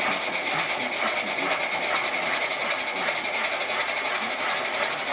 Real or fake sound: real